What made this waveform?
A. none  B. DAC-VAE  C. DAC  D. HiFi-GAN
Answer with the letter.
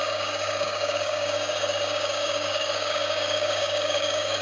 C